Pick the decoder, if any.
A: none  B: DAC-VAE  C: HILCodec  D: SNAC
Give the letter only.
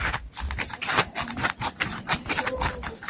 A